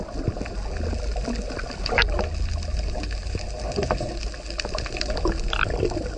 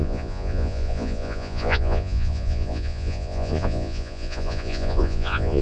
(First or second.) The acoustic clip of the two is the first